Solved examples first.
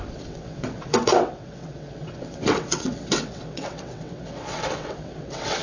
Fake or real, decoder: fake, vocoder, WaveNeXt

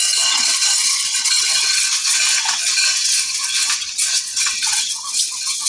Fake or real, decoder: fake, vocoder, WaveNeXt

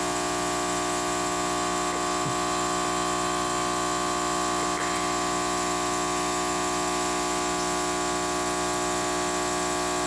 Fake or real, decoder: real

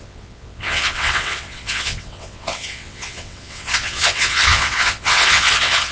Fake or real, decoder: fake, vocoder, WaveNeXt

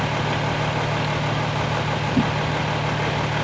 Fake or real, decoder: real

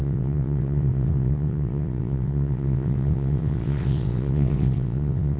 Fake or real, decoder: fake, vocoder, WaveNeXt